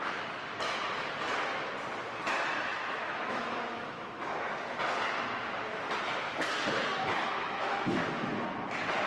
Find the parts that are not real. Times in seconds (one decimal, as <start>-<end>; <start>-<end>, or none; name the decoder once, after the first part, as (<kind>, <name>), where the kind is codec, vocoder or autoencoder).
2.7-4.4 (autoencoder, DAC-VAE); 6.9-8.3